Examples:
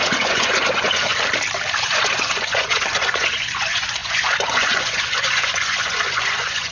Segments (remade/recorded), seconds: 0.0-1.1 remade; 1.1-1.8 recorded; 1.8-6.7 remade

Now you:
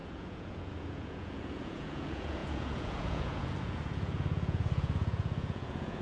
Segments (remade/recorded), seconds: 0.0-6.0 remade

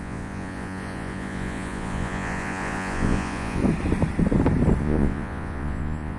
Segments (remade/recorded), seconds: 0.0-3.6 remade; 3.6-4.8 recorded; 4.8-6.2 remade